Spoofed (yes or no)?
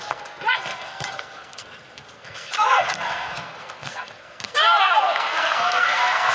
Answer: yes